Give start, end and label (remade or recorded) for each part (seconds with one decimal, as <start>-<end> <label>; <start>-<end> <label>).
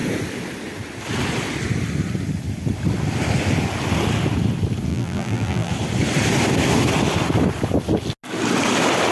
0.0-4.9 recorded; 4.9-5.7 remade; 5.7-9.1 recorded